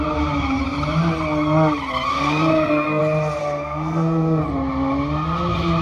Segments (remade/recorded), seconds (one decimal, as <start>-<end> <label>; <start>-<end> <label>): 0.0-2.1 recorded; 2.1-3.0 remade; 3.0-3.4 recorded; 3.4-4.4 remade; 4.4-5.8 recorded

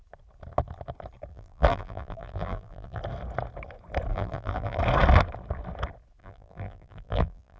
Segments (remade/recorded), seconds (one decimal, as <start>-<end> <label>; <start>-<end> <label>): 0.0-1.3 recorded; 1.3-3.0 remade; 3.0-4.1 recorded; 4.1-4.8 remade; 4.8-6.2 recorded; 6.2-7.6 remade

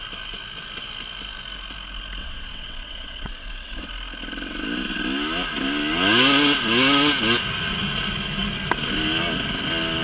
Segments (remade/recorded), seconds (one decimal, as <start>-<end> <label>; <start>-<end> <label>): 0.0-2.2 recorded; 2.2-3.9 remade; 3.9-10.0 recorded

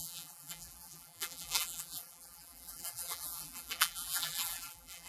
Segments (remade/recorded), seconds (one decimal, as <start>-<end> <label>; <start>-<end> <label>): 0.0-5.1 remade

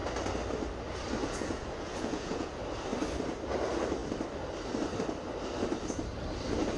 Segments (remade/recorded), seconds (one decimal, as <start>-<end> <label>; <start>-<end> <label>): 0.0-1.2 recorded; 1.2-2.6 remade; 2.6-6.8 recorded

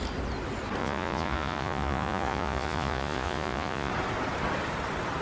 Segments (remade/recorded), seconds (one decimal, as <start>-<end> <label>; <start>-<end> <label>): 0.0-0.8 recorded; 0.8-3.9 remade; 3.9-5.2 recorded

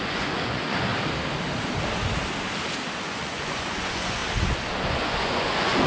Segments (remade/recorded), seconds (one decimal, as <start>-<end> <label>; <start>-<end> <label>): 0.0-0.9 remade; 0.9-3.1 recorded; 3.1-4.2 remade; 4.2-4.8 recorded; 4.8-5.9 remade